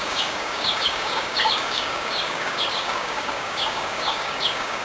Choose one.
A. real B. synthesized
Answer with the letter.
B